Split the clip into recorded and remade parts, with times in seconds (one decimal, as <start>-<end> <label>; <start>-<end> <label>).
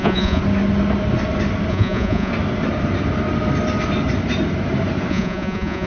0.0-0.4 remade; 0.4-1.7 recorded; 1.7-2.3 remade; 2.3-5.1 recorded; 5.1-5.9 remade